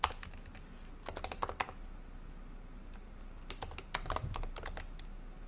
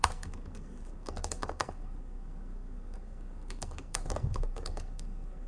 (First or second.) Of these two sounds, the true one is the first